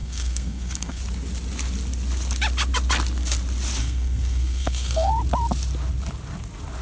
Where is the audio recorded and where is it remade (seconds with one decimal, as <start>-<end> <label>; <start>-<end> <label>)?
0.0-1.0 remade; 1.0-3.8 recorded; 3.8-5.1 remade; 5.1-6.8 recorded